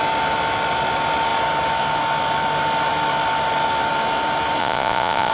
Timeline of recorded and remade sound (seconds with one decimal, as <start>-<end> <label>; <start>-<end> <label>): 0.0-4.6 recorded; 4.6-5.3 remade